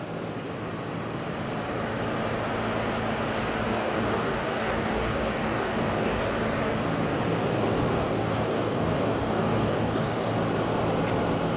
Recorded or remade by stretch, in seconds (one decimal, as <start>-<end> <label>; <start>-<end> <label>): 0.0-3.7 recorded; 3.7-6.2 remade; 6.2-7.9 recorded; 7.9-10.3 remade; 10.3-11.6 recorded